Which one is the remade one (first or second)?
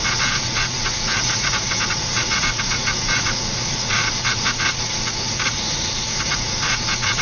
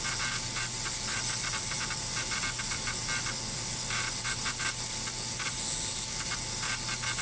first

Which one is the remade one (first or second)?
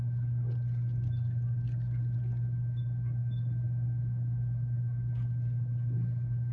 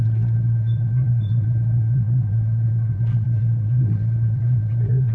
second